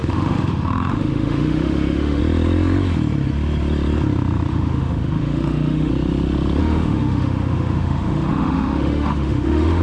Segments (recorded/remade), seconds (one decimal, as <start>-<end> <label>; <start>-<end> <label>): 0.0-2.2 remade; 2.2-4.5 recorded; 4.5-5.9 remade; 5.9-6.6 recorded; 6.6-9.8 remade

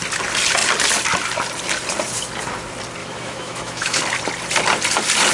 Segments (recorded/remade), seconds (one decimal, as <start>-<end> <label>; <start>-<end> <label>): 0.0-3.0 recorded; 3.0-4.0 remade; 4.0-5.3 recorded

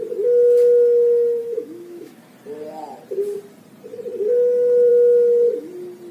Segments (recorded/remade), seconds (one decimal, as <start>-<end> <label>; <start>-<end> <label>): 0.0-1.4 recorded; 1.4-2.2 remade; 2.2-6.1 recorded